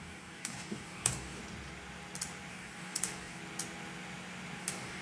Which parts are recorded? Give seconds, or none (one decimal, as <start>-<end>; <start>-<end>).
1.4-2.5; 3.4-4.6